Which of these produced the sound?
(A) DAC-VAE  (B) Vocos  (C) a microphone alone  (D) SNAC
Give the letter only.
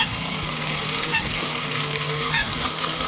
D